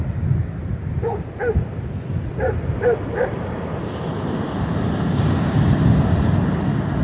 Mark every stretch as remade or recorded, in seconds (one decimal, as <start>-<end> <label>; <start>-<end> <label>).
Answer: 0.0-2.3 recorded; 2.3-6.0 remade; 6.0-7.0 recorded

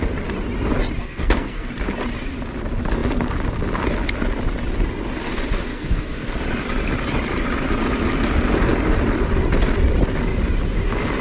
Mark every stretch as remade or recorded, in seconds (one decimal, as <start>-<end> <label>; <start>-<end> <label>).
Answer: 0.0-1.0 recorded; 1.0-1.7 remade; 1.7-5.7 recorded; 5.7-6.3 remade; 6.3-11.2 recorded

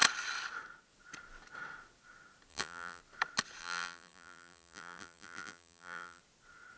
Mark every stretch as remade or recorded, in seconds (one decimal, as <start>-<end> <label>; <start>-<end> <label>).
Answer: 0.0-2.5 recorded; 2.5-3.0 remade; 3.0-3.6 recorded; 3.6-6.2 remade; 6.2-6.8 recorded

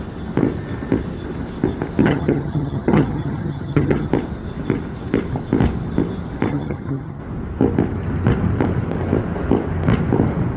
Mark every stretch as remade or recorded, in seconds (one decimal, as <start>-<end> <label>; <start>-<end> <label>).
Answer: 0.0-2.0 recorded; 2.0-4.1 remade; 4.1-6.5 recorded; 6.5-7.2 remade; 7.2-10.6 recorded

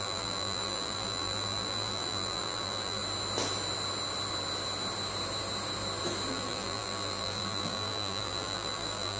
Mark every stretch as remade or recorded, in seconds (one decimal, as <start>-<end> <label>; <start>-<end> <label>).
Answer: 0.0-3.0 remade; 3.0-6.3 recorded; 6.3-9.2 remade